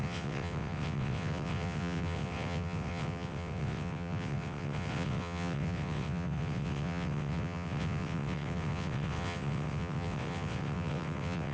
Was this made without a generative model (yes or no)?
no